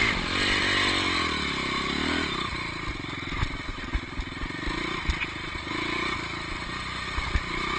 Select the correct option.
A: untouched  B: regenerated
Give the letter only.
A